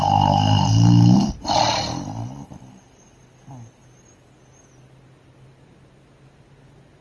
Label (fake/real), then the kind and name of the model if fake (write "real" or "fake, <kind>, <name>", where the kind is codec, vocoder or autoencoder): real